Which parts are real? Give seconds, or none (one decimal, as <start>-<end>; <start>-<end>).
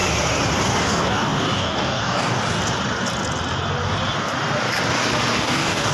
0.0-0.8; 2.4-5.4